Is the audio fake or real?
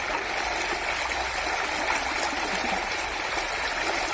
real